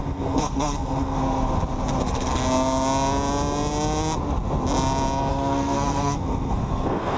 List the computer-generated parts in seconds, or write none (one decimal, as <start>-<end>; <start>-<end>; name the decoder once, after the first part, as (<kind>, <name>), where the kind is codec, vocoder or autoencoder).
0.0-1.2 (codec, SNAC); 2.0-2.4; 5.3-7.2